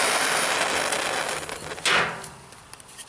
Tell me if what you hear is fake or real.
real